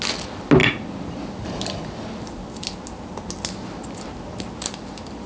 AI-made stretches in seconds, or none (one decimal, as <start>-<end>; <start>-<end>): none